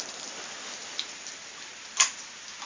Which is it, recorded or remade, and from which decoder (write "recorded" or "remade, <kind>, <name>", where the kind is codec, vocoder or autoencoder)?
recorded